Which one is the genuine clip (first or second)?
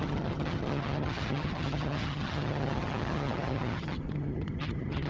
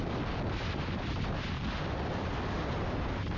second